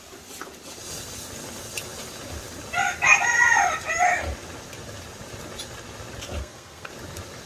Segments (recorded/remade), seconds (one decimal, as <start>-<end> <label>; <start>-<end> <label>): 0.0-6.4 recorded; 6.4-6.9 remade; 6.9-7.5 recorded

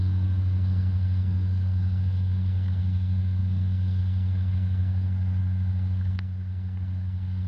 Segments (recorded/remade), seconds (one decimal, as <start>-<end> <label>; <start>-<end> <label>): 0.0-7.5 remade

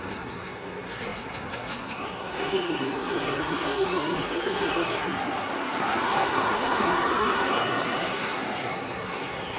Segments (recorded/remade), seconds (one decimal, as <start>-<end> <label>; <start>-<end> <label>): 0.0-9.6 remade

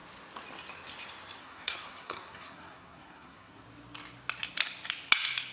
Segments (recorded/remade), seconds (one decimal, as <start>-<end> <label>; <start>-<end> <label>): 0.0-1.4 recorded; 1.4-3.6 remade; 3.6-5.5 recorded